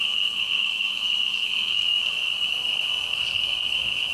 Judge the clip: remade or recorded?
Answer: remade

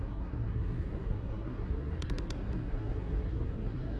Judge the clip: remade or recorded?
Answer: remade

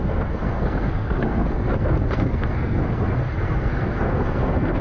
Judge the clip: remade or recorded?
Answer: remade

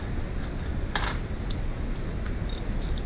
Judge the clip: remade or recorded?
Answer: recorded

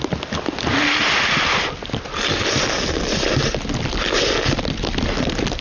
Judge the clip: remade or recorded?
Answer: recorded